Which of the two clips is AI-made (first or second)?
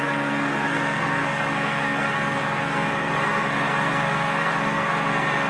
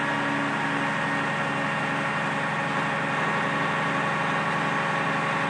first